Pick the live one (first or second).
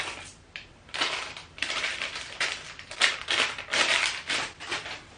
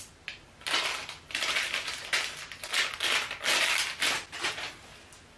second